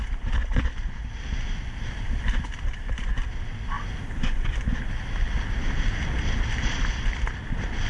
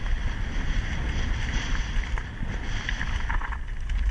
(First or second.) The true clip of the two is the first